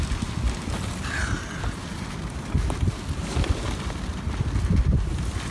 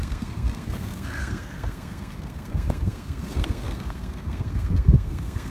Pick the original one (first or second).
first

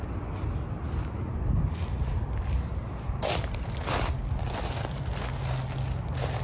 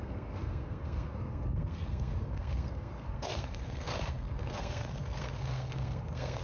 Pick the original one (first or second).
first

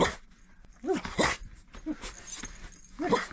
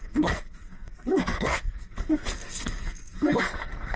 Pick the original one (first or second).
first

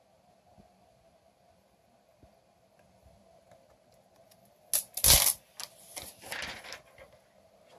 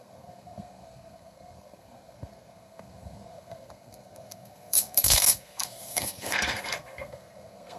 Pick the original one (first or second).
first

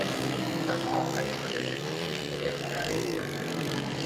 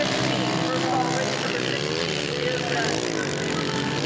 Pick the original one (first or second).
second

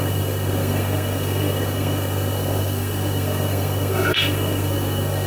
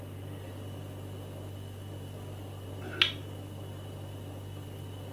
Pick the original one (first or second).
second